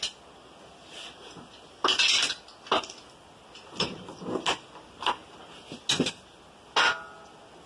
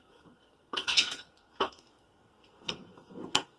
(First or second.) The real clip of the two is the first